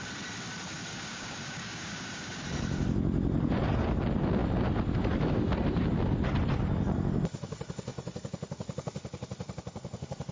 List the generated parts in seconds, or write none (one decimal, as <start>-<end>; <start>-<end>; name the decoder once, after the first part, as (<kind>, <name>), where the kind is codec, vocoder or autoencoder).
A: 0.9-2.4 (codec, DAC)